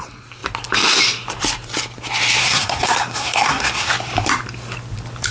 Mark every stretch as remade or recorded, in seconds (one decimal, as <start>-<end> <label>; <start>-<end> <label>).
0.0-2.4 recorded; 2.4-3.9 remade; 3.9-5.3 recorded